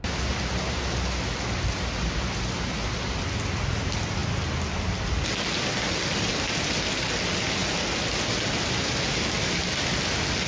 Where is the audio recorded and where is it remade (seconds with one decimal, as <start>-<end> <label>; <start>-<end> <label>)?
0.0-10.5 recorded

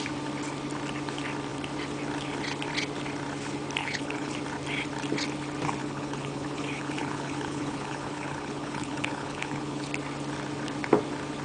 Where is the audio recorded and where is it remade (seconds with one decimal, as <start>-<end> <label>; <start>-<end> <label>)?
0.0-3.8 recorded; 3.8-4.3 remade; 4.3-5.8 recorded; 5.8-9.9 remade; 9.9-11.4 recorded

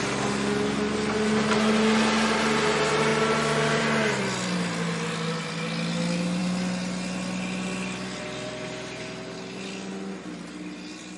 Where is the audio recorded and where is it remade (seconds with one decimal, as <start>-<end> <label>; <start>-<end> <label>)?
0.0-11.2 recorded

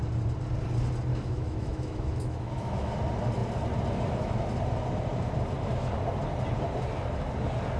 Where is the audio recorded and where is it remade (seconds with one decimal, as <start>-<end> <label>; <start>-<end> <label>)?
0.0-1.1 recorded; 1.1-2.9 remade; 2.9-7.8 recorded

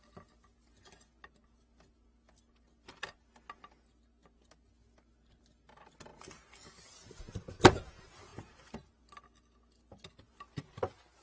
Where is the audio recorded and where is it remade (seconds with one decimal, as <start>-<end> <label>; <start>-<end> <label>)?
0.0-6.1 recorded; 6.1-6.8 remade; 6.8-8.3 recorded; 8.3-9.0 remade; 9.0-11.2 recorded

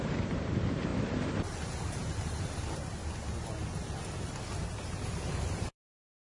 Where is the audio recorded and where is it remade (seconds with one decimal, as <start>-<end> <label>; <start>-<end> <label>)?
0.0-0.9 remade; 0.9-1.9 recorded; 1.9-3.0 remade; 3.0-4.6 recorded; 4.6-6.3 remade

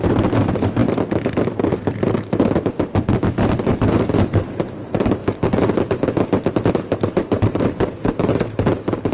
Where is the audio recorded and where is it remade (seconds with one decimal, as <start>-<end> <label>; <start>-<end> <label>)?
0.0-5.2 remade; 5.2-6.7 recorded; 6.7-9.1 remade

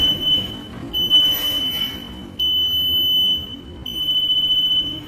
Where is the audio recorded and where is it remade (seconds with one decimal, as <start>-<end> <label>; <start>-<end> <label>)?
0.0-0.5 remade; 0.5-1.1 recorded; 1.1-1.6 remade; 1.6-4.0 recorded; 4.0-5.1 remade